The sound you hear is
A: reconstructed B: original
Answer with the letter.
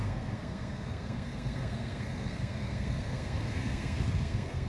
A